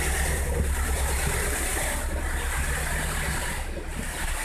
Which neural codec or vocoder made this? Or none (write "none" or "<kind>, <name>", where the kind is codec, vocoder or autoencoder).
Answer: none